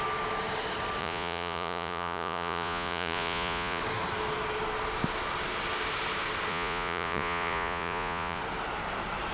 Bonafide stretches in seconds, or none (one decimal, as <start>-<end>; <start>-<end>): 0.0-1.0; 3.8-6.5; 8.4-9.3